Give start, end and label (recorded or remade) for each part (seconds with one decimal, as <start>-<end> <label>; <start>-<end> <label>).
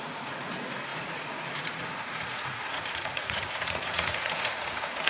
0.0-5.1 remade